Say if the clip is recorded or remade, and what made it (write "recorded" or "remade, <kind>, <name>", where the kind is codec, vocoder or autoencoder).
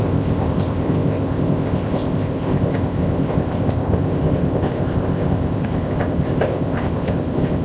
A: remade, codec, ZipCodec